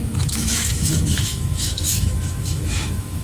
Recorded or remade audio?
remade